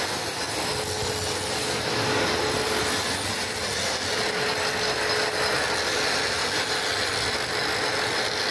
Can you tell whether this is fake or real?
real